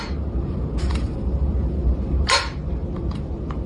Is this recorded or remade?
remade